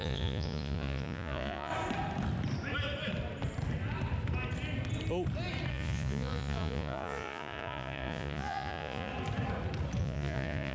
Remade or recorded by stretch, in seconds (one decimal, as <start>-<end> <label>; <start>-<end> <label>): 0.0-1.7 remade; 1.7-5.7 recorded; 5.7-9.1 remade; 9.1-10.0 recorded; 10.0-10.7 remade